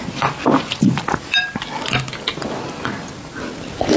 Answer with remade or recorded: recorded